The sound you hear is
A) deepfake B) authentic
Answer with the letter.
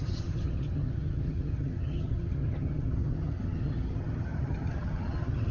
A